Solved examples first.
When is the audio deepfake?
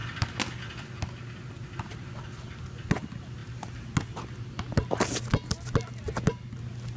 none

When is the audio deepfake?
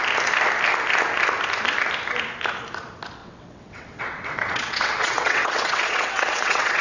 3.2-6.8 (vocoder, WaveNeXt)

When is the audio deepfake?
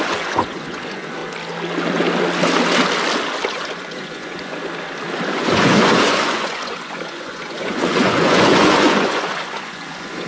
0.0-1.2 (vocoder, Vocos); 3.5-4.6; 5.3-10.3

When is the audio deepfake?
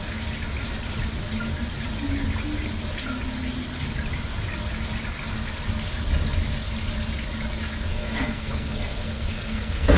7.9-10.0 (codec, SNAC)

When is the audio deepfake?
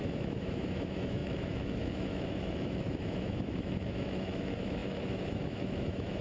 0.0-6.2 (autoencoder, DAC-VAE)